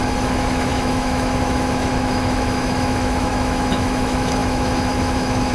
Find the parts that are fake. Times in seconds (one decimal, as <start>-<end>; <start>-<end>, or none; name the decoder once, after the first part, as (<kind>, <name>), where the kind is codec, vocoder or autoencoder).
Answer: 0.0-5.5 (autoencoder, DAC-VAE)